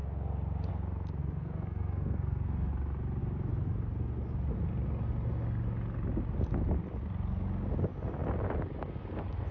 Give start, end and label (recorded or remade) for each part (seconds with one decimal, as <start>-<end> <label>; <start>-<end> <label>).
0.0-1.2 recorded; 1.2-2.7 remade; 2.7-9.5 recorded